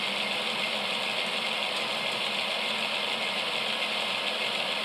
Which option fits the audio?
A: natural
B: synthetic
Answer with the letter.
A